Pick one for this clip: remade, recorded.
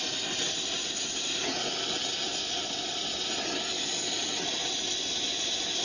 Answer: recorded